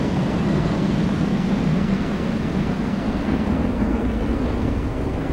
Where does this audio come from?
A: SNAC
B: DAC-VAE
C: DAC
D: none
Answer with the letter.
A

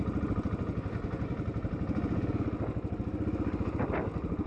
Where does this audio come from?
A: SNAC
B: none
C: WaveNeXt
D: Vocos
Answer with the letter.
B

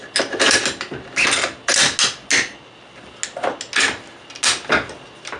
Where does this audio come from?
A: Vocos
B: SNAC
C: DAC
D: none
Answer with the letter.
D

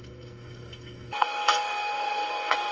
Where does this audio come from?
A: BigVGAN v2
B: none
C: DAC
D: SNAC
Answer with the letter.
D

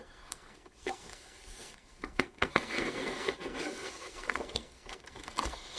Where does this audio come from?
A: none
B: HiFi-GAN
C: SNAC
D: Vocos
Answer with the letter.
C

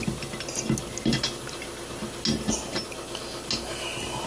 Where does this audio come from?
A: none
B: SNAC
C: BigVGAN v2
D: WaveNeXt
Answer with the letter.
A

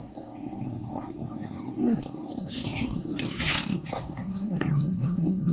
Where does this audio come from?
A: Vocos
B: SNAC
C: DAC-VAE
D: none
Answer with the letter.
B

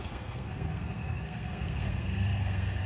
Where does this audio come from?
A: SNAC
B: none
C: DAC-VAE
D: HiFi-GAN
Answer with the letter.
A